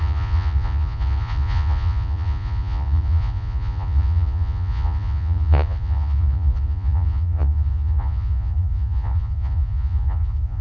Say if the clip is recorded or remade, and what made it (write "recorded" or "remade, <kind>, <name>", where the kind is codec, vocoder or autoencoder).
remade, vocoder, Vocos